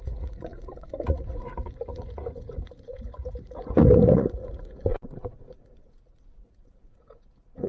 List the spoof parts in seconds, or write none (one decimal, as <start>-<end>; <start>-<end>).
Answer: 0.0-7.7